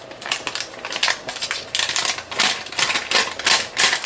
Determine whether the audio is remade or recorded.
recorded